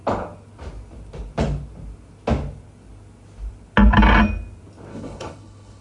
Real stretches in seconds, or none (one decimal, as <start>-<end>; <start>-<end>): 0.0-4.9

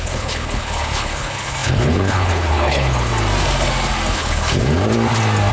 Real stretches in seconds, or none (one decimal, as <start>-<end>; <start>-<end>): 3.1-4.1; 4.6-5.5

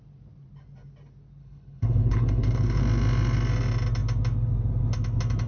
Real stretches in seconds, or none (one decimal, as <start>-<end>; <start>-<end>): 0.0-1.4; 2.8-5.5